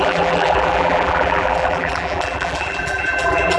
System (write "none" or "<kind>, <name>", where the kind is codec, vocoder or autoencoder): vocoder, BigVGAN v2